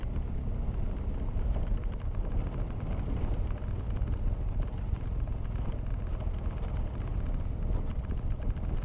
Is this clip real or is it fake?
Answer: real